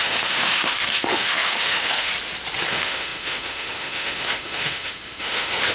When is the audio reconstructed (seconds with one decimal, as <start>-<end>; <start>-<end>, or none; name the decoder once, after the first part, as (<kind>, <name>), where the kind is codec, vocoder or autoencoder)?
0.0-2.1 (autoencoder, DAC-VAE); 2.7-5.7